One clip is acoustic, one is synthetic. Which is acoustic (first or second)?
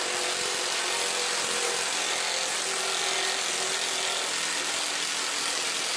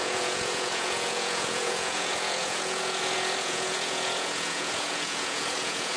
first